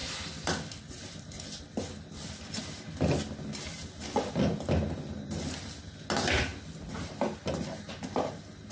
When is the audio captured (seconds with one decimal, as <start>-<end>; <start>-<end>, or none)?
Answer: 0.0-8.7